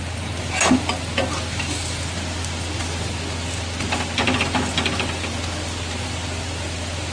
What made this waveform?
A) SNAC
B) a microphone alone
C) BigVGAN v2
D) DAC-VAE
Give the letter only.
B